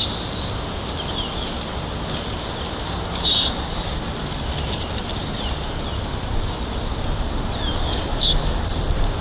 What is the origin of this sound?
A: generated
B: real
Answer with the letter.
B